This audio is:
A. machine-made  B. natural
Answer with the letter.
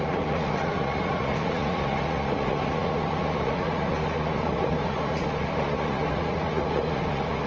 A